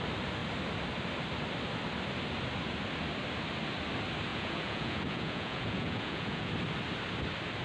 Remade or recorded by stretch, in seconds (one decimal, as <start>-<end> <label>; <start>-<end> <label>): 0.0-4.3 recorded; 4.3-6.5 remade; 6.5-7.6 recorded